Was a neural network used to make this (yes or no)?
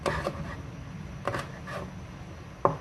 no